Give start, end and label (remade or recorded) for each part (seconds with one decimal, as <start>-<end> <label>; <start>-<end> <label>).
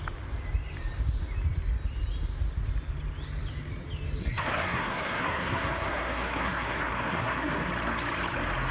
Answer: 0.0-4.2 recorded; 4.2-7.7 remade; 7.7-8.7 recorded